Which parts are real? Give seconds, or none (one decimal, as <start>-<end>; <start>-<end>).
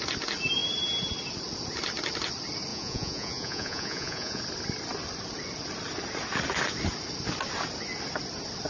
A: 0.0-2.7; 4.4-8.7